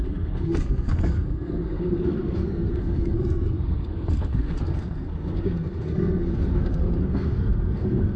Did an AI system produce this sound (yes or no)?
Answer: yes